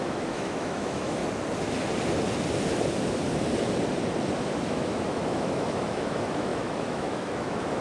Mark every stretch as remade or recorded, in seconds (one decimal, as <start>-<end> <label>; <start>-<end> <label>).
0.0-1.2 remade; 1.2-4.6 recorded; 4.6-7.8 remade